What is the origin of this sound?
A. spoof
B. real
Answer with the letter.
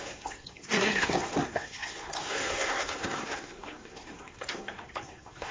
A